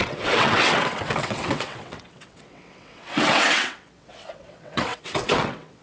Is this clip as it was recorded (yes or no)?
no